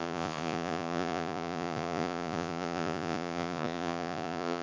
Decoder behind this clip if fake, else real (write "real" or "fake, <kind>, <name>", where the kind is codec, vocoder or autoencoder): fake, vocoder, Vocos